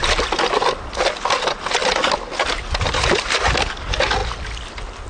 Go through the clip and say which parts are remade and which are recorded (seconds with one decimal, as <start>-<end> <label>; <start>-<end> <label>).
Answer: 0.0-5.1 recorded